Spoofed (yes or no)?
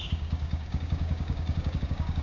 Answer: yes